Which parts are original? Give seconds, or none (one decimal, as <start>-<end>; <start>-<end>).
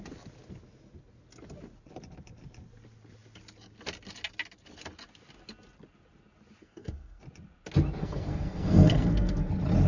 0.0-6.6; 7.2-8.0; 9.5-9.9